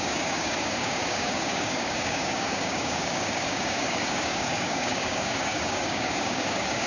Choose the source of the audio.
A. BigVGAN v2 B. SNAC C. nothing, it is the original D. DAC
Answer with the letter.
D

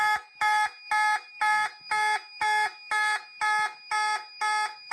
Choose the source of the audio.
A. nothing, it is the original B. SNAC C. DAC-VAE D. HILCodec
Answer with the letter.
A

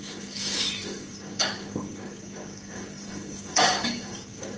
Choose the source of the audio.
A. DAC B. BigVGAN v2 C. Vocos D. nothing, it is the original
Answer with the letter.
A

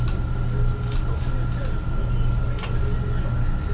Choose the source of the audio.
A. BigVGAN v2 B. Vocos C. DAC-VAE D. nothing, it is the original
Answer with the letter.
D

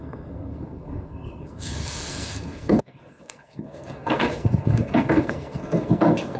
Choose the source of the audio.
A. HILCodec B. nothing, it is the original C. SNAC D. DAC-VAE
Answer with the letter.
C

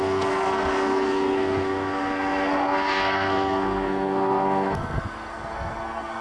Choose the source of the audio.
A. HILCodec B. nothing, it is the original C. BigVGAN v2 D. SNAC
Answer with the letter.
D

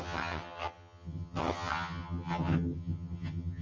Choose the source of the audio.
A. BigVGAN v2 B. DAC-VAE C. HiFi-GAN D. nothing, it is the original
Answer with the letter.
C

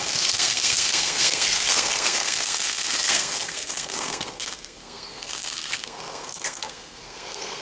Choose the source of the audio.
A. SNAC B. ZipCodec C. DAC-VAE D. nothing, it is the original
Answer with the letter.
A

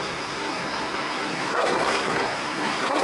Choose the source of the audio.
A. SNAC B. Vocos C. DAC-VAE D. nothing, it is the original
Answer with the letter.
A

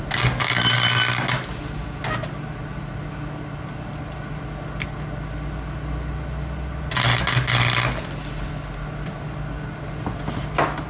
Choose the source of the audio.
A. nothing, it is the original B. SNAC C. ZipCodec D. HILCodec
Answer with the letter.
A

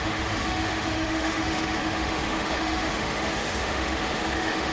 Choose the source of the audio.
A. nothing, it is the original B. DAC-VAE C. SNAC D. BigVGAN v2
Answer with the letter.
B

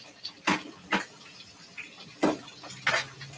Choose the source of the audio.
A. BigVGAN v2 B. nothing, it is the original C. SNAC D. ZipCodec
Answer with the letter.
B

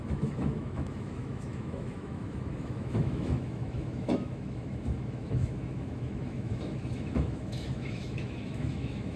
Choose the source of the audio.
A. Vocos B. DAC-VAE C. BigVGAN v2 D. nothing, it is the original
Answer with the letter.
B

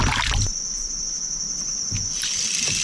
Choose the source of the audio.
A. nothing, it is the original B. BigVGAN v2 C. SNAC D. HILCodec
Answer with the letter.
A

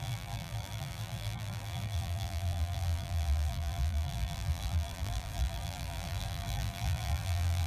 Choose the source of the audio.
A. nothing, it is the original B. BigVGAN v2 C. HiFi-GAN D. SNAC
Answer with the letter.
B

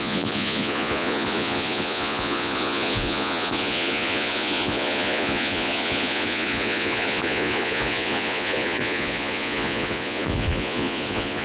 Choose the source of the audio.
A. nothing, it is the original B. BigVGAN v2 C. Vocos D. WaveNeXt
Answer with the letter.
C